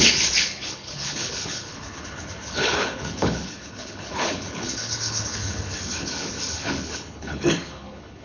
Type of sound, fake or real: fake